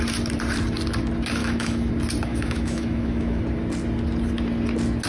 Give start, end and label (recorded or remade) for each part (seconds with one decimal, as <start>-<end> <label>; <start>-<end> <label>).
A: 0.0-1.4 recorded; 1.4-1.9 remade; 1.9-2.3 recorded; 2.3-3.4 remade; 3.4-5.1 recorded

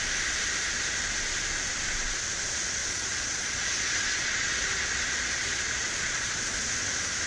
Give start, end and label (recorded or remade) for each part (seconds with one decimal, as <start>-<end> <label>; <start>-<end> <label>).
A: 0.0-2.8 recorded; 2.8-6.7 remade; 6.7-7.3 recorded

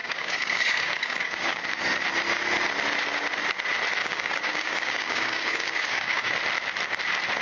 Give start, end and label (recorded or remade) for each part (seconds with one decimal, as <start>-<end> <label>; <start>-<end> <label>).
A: 0.0-1.6 remade; 1.6-4.0 recorded; 4.0-6.3 remade; 6.3-7.4 recorded